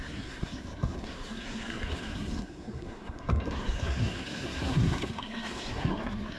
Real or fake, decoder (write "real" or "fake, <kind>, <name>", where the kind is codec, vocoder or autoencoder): fake, codec, SNAC